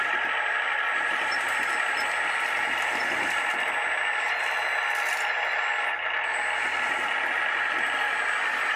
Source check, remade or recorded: recorded